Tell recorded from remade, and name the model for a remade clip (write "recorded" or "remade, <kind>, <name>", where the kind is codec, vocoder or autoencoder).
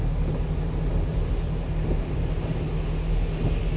recorded